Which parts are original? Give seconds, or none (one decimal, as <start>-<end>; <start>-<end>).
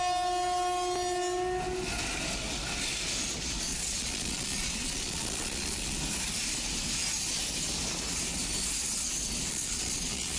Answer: 0.0-3.7; 6.0-9.5